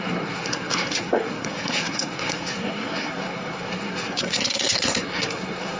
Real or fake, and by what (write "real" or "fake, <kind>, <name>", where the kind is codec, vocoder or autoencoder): fake, codec, SNAC